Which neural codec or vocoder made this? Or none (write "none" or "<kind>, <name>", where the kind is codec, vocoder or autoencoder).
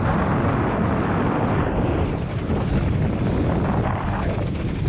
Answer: none